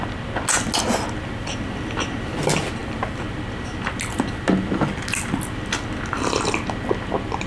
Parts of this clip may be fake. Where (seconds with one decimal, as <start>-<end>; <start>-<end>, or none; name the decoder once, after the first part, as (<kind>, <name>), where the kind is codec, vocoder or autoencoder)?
none